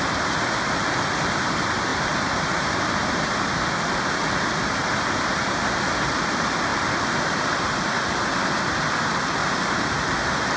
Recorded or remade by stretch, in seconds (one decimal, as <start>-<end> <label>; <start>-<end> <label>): 0.0-1.9 recorded; 1.9-2.8 remade; 2.8-6.7 recorded; 6.7-7.9 remade; 7.9-9.4 recorded; 9.4-10.2 remade; 10.2-10.6 recorded